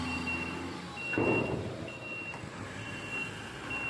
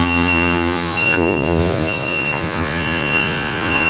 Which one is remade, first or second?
second